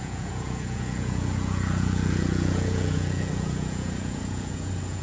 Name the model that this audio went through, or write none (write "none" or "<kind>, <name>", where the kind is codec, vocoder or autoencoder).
vocoder, Vocos